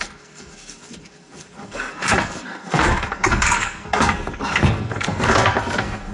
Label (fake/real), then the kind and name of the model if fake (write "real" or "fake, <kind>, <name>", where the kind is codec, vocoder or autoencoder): fake, codec, SNAC